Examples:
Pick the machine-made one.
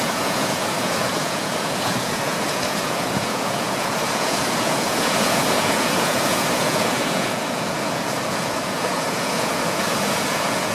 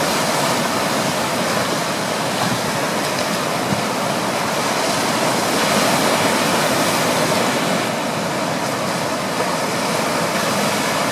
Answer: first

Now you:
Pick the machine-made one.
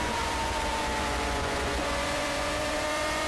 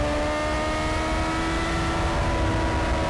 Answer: first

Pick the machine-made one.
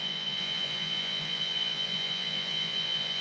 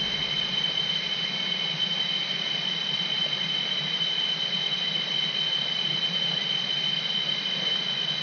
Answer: first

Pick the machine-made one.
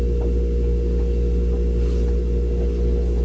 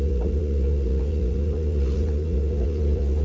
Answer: second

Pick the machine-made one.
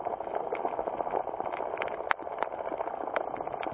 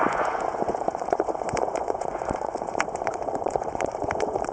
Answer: second